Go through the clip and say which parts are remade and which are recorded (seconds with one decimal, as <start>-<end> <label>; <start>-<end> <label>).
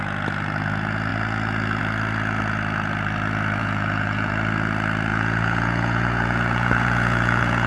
0.0-3.6 recorded; 3.6-4.3 remade; 4.3-5.1 recorded; 5.1-7.7 remade